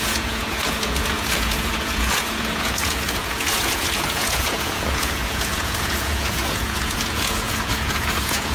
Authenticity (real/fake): fake